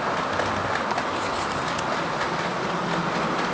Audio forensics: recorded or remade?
recorded